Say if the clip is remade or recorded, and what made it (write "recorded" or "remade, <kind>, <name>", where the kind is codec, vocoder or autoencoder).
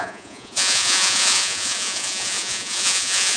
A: remade, vocoder, Vocos